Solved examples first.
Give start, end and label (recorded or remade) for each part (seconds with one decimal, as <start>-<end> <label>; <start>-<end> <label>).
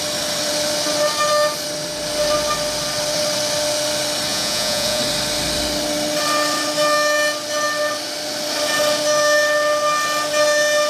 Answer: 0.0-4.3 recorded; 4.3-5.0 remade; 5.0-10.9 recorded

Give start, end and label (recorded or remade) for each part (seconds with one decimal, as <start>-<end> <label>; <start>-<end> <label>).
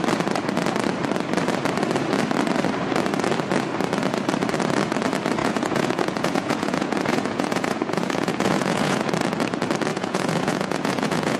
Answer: 0.0-5.4 recorded; 5.4-9.1 remade; 9.1-9.9 recorded; 9.9-11.4 remade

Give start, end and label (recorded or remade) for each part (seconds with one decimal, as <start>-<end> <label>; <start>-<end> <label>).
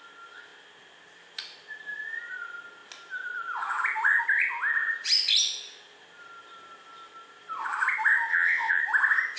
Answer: 0.0-8.3 recorded; 8.3-8.8 remade; 8.8-9.4 recorded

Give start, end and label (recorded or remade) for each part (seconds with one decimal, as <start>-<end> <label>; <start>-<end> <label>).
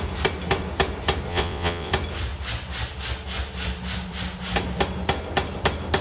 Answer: 0.0-1.3 recorded; 1.3-1.9 remade; 1.9-6.0 recorded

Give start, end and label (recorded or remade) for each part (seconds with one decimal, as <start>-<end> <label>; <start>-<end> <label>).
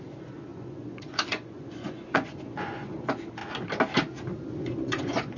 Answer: 0.0-3.4 remade; 3.4-4.6 recorded; 4.6-5.4 remade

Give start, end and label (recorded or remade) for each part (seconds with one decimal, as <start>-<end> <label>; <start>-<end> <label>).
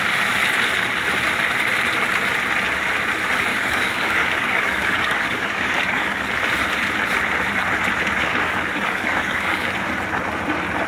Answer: 0.0-3.5 recorded; 3.5-6.2 remade; 6.2-8.2 recorded; 8.2-9.7 remade; 9.7-10.9 recorded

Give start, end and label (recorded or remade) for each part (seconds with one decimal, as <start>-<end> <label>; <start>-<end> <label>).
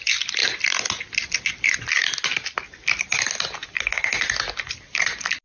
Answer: 0.0-5.4 recorded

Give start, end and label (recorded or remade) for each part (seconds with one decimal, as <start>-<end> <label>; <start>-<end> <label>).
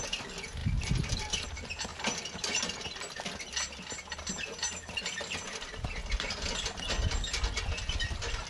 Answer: 0.0-1.9 recorded; 1.9-2.6 remade; 2.6-8.5 recorded